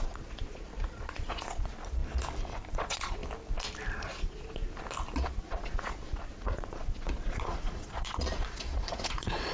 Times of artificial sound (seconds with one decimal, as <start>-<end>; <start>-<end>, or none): 0.0-2.0; 2.7-3.2; 4.0-4.6; 5.4-9.5